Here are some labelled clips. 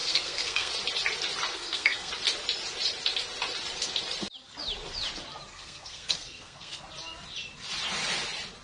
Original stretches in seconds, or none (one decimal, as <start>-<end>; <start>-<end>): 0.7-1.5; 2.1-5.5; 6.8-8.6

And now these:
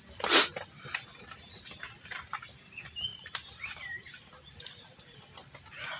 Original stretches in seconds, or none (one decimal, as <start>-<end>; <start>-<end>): 0.0-3.1; 5.2-6.0

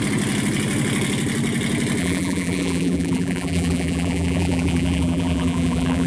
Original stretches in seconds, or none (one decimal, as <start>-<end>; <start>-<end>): 0.0-2.0

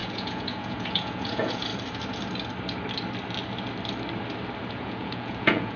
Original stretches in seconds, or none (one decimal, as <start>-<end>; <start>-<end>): 1.7-4.7

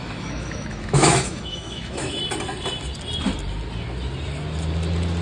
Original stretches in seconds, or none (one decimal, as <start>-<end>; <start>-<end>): 2.2-5.2

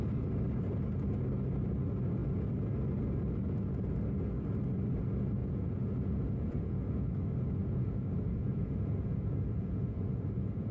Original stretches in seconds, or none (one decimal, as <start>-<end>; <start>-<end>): 0.0-5.4; 7.1-7.6

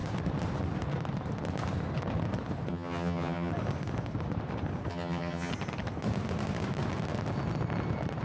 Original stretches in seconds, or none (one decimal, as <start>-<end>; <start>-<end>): 0.0-2.7; 3.5-4.9; 5.5-8.2